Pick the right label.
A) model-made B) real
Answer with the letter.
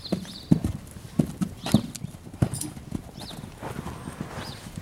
B